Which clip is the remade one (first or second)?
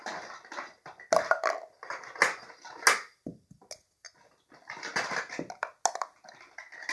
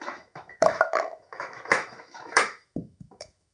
second